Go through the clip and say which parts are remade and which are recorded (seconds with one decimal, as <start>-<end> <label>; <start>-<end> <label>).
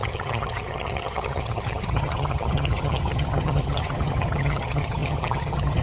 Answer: 0.0-5.8 remade